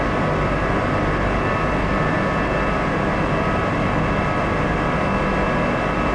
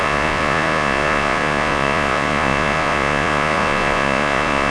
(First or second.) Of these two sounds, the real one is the first